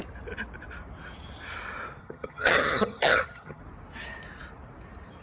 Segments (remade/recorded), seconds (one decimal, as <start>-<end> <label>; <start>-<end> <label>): 0.0-2.0 recorded; 2.0-3.6 remade; 3.6-5.2 recorded